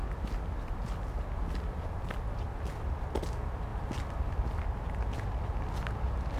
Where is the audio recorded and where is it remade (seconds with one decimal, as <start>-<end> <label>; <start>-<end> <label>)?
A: 0.0-6.4 recorded